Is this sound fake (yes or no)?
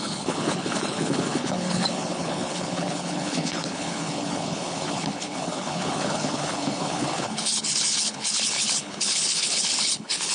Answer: yes